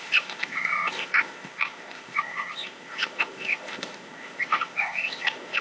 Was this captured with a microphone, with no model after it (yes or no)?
no